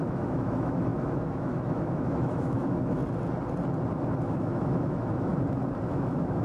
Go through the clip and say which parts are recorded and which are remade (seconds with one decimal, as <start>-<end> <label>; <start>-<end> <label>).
0.0-3.0 remade; 3.0-4.2 recorded; 4.2-5.3 remade; 5.3-5.9 recorded; 5.9-6.4 remade